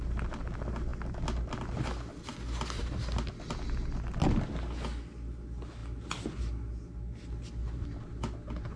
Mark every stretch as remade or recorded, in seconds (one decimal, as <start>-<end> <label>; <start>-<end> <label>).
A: 0.0-8.8 recorded